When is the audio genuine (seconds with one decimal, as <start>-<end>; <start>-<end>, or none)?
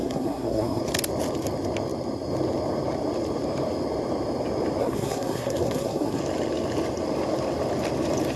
0.8-4.8; 6.2-8.4